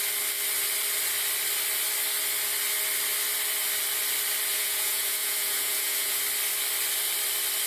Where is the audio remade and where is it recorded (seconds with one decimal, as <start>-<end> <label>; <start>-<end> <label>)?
0.0-4.5 recorded; 4.5-6.2 remade; 6.2-7.7 recorded